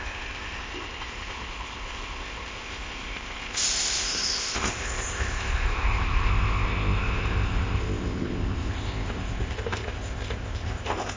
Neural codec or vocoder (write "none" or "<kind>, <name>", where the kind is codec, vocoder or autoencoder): codec, ZipCodec